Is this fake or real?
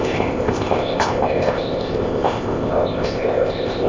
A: fake